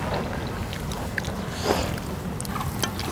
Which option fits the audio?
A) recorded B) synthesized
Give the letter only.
A